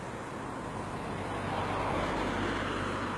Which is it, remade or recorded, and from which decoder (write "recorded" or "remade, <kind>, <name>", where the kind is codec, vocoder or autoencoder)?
recorded